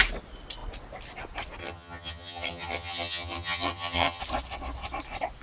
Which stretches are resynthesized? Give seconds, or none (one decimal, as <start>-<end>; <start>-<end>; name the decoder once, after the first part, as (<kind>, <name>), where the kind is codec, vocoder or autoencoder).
1.6-4.2 (vocoder, HiFi-GAN)